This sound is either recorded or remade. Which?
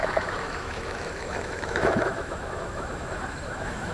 remade